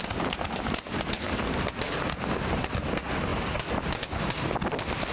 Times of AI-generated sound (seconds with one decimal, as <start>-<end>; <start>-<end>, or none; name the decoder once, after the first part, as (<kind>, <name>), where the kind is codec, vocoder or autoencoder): none